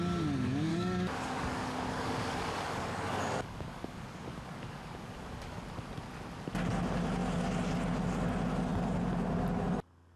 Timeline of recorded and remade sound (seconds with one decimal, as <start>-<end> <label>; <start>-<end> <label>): 0.0-0.7 recorded; 0.7-5.6 remade; 5.6-10.2 recorded